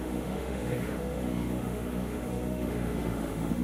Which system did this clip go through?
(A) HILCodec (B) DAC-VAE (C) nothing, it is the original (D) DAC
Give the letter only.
B